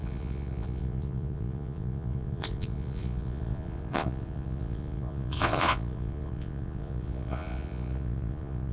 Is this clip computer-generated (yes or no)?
yes